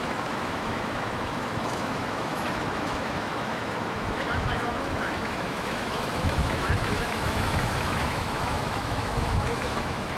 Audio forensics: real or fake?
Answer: fake